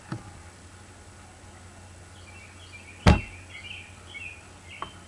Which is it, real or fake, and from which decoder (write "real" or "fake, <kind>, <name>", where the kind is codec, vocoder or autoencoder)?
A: real